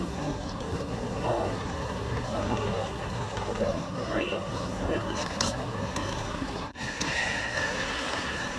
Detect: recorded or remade remade